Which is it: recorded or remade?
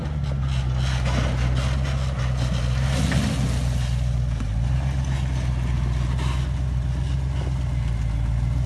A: recorded